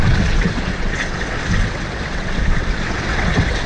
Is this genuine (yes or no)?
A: no